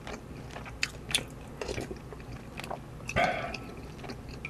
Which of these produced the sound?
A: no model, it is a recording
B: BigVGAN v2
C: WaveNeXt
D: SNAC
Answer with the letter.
A